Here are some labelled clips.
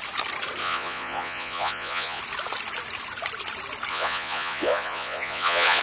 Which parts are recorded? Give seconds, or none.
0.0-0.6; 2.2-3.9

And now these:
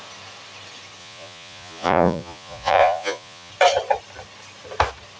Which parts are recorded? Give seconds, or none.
0.0-1.0; 3.5-5.2

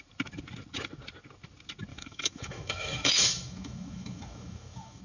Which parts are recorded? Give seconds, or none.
0.0-1.9

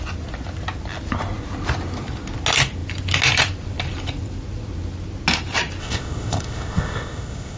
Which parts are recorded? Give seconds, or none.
0.0-5.8